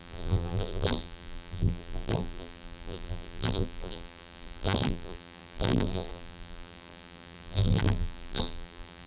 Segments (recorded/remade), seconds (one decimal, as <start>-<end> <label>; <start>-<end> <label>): 0.0-9.1 remade